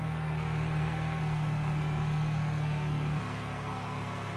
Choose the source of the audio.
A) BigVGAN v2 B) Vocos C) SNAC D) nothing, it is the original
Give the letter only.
C